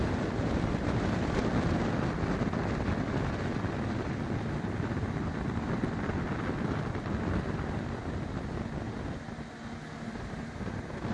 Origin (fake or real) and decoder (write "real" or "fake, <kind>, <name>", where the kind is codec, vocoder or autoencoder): real